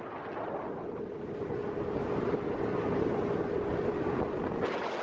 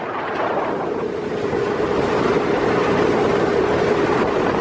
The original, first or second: first